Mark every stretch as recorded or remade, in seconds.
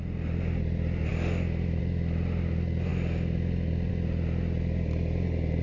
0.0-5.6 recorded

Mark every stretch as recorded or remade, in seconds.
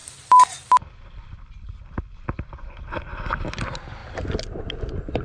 0.0-5.2 recorded